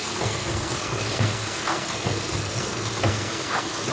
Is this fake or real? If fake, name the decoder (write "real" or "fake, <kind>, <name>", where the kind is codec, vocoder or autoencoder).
fake, codec, SNAC